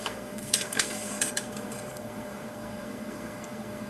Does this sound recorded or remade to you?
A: remade